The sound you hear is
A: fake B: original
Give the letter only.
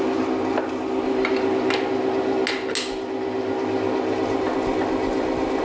B